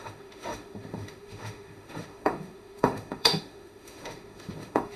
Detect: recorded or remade remade